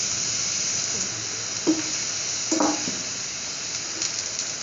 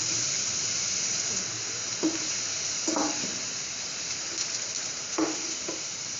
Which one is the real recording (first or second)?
first